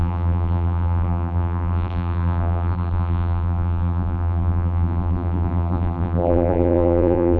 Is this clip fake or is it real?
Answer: fake